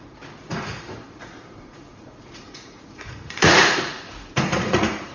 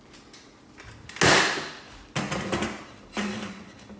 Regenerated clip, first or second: first